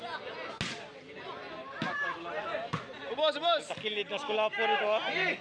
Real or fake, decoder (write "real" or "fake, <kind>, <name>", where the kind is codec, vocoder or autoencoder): real